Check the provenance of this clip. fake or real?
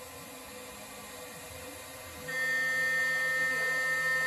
real